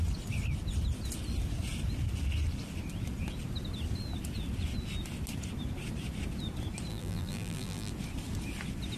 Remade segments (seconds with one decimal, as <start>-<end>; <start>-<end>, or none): 6.9-7.9